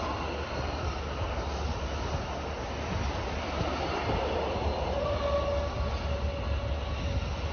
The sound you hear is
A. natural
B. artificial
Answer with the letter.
A